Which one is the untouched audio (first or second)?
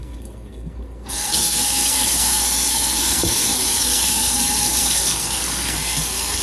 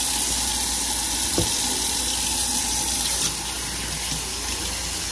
second